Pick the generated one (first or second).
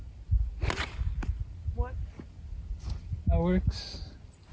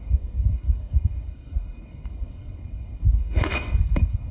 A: second